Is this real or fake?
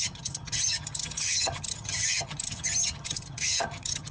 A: fake